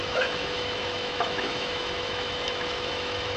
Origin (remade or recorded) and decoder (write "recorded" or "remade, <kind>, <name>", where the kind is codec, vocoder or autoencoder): remade, autoencoder, DAC-VAE